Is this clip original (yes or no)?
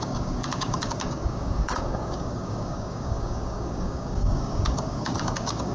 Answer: no